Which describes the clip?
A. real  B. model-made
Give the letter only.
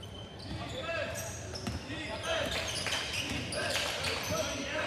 B